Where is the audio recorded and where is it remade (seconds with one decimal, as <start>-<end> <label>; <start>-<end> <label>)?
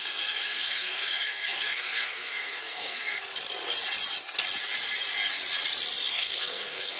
0.0-3.2 remade; 3.2-6.1 recorded; 6.1-7.0 remade